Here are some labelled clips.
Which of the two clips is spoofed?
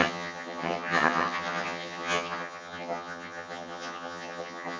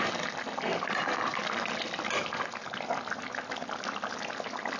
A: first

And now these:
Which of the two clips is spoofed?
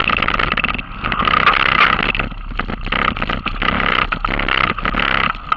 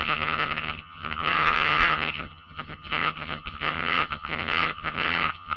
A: second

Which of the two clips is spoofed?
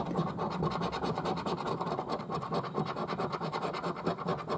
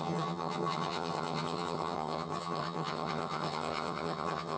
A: second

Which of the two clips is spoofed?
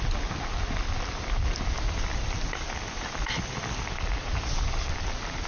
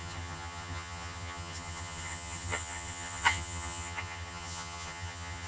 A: second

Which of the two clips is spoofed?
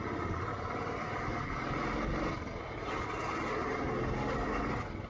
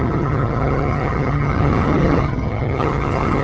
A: second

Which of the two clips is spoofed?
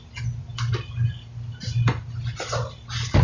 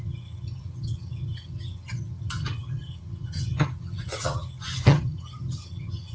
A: second